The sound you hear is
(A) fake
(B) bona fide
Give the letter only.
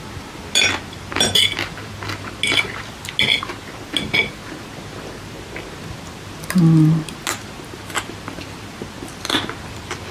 B